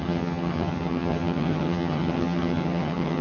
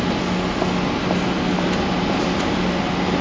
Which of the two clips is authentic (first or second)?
second